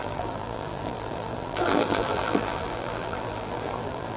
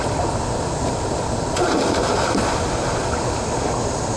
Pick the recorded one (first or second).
second